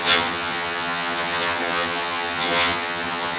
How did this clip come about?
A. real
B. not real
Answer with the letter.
B